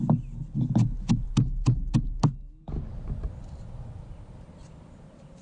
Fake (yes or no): no